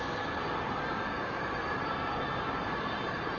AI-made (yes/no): no